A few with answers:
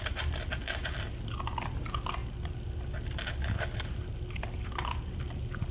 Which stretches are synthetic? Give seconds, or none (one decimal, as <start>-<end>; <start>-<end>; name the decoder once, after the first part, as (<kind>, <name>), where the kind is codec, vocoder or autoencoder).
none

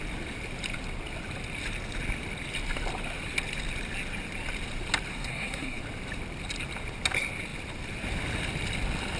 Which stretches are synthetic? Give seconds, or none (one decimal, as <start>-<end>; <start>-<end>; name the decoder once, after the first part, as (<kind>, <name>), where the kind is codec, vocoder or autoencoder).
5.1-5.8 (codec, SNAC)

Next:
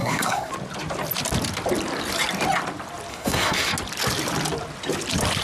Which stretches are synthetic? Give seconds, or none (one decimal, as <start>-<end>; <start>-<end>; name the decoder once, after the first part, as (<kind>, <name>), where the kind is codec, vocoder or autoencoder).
0.0-0.5 (codec, SNAC); 3.1-3.7

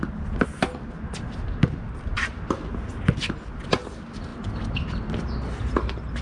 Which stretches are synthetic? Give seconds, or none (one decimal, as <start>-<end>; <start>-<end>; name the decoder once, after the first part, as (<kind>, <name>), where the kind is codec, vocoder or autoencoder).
none